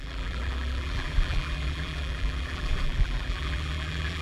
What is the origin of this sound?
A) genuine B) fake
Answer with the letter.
B